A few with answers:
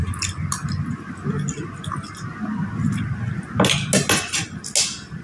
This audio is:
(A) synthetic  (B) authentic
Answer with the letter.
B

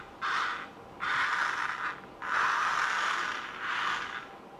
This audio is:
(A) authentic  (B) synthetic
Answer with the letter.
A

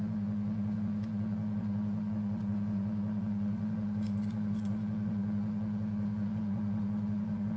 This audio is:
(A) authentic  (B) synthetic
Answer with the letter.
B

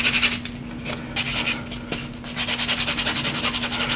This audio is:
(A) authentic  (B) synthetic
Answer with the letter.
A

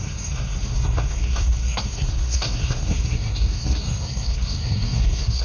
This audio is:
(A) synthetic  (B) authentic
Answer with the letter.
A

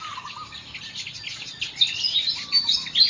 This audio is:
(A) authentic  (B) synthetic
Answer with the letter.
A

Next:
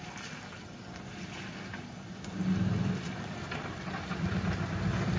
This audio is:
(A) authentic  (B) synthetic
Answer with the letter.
A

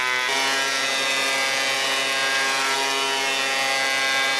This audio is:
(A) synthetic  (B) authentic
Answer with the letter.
B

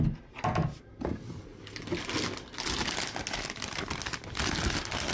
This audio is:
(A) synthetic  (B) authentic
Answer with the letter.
B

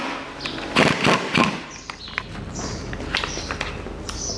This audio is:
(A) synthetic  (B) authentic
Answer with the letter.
B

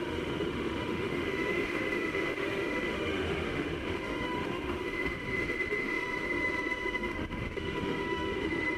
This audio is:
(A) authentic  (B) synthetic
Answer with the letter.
B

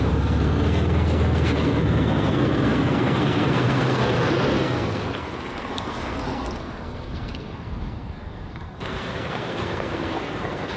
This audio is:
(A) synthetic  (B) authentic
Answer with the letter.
A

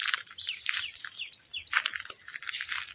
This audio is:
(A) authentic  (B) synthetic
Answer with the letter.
A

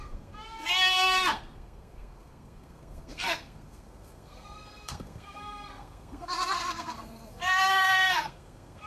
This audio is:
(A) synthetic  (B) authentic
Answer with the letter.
A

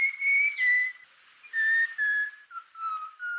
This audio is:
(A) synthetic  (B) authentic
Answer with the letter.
B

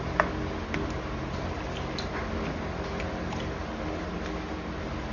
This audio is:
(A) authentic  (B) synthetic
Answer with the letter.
A